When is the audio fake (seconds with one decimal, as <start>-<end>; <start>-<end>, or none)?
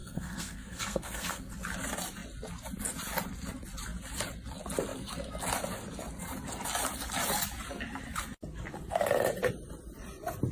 0.0-1.5